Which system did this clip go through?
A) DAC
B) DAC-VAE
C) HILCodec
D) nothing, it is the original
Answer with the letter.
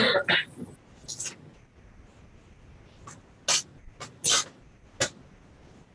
D